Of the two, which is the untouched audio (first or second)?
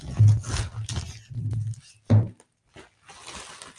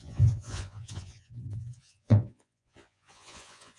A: first